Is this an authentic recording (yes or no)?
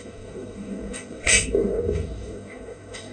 no